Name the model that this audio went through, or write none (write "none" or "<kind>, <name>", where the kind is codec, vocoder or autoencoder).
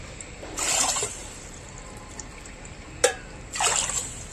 vocoder, BigVGAN v2